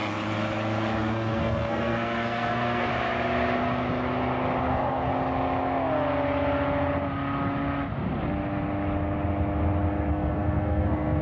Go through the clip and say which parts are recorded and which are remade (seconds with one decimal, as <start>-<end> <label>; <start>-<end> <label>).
0.0-1.0 recorded; 1.0-2.9 remade; 2.9-4.6 recorded; 4.6-5.1 remade; 5.1-10.1 recorded; 10.1-11.2 remade